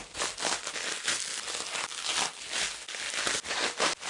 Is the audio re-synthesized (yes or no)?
no